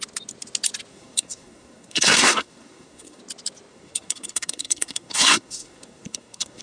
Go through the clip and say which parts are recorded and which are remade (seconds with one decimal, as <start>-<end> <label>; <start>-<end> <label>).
0.0-0.9 recorded; 0.9-3.2 remade; 3.2-3.7 recorded; 3.7-6.6 remade